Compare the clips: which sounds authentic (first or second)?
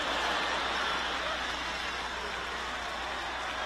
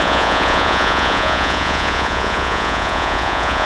first